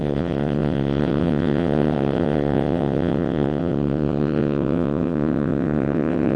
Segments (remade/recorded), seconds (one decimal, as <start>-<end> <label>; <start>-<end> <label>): 0.0-6.4 remade